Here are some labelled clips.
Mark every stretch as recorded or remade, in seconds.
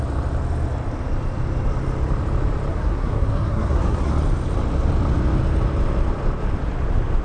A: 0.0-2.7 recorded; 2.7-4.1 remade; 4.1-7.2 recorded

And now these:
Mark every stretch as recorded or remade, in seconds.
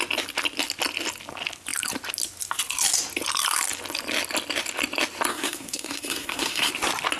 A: 0.0-5.3 recorded; 5.3-6.7 remade; 6.7-7.2 recorded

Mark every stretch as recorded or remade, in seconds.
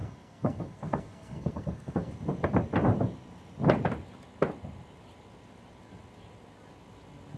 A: 0.0-2.1 remade; 2.1-7.4 recorded